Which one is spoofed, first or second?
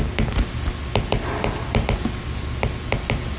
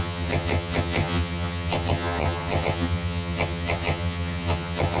second